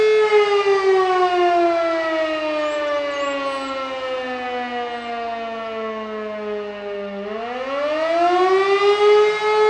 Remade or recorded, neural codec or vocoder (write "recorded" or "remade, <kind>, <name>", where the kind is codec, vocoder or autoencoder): recorded